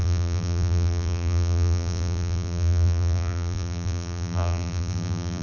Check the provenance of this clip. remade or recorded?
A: remade